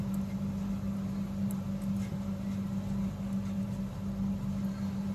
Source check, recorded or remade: recorded